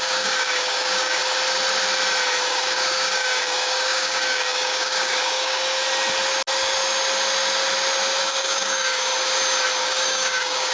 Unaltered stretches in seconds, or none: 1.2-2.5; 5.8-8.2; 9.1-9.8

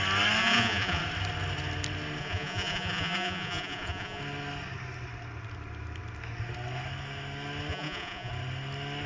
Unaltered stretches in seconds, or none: 0.0-0.4; 1.0-2.2; 4.2-7.7; 8.3-9.1

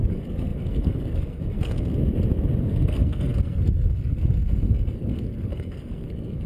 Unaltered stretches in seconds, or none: 1.9-2.6

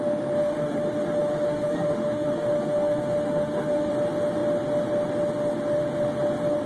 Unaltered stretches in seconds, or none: 0.0-0.4; 3.9-6.7